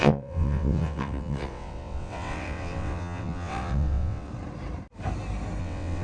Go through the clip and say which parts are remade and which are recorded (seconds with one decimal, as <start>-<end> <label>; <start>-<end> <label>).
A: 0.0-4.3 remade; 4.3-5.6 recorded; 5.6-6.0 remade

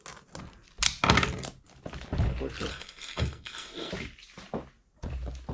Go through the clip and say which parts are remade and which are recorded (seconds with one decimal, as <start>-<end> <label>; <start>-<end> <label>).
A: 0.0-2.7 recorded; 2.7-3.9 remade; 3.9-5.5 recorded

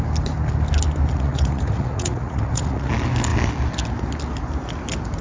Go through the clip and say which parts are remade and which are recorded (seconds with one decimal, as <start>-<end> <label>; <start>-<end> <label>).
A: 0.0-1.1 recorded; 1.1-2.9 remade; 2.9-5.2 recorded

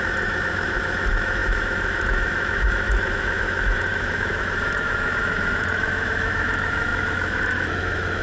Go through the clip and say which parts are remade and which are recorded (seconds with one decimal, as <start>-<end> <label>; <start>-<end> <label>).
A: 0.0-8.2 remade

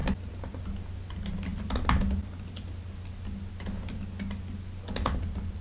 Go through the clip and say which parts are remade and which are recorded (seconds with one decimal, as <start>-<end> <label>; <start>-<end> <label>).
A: 0.0-5.6 recorded

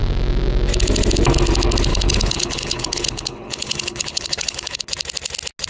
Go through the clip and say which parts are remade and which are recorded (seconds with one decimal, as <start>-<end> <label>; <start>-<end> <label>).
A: 0.0-1.9 recorded; 1.9-4.8 remade; 4.8-5.7 recorded